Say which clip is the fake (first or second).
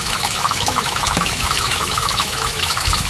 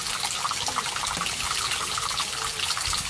first